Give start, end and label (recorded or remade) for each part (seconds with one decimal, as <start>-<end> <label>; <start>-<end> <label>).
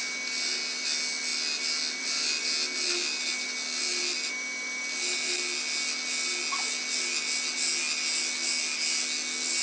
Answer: 0.0-9.6 recorded